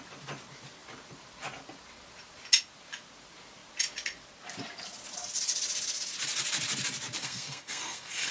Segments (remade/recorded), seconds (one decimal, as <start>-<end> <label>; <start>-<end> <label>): 0.0-7.2 recorded; 7.2-8.3 remade